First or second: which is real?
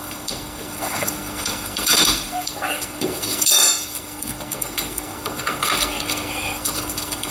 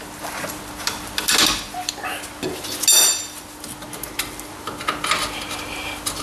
second